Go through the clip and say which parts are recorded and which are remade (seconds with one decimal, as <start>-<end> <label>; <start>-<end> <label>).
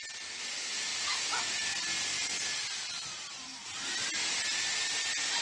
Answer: 0.0-5.4 recorded